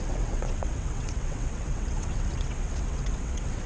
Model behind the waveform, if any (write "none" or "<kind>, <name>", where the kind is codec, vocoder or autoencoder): vocoder, WaveNeXt